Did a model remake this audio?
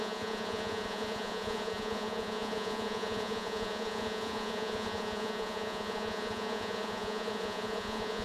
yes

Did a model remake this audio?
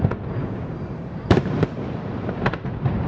yes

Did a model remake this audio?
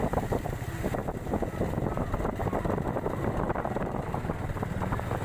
no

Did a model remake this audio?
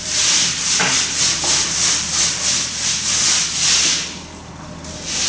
no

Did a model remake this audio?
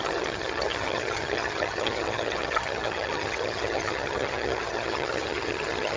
yes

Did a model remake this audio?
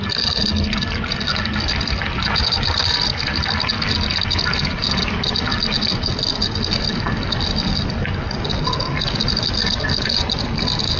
no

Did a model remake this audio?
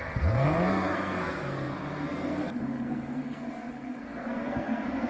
yes